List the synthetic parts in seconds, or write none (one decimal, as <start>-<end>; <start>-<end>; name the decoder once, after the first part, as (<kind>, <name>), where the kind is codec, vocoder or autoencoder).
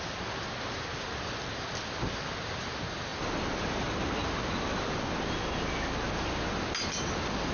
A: none